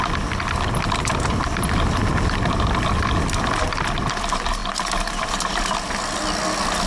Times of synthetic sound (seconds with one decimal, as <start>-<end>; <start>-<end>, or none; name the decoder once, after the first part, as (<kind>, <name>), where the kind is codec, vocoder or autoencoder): none